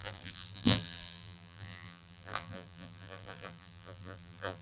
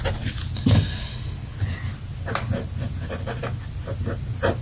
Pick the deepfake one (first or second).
first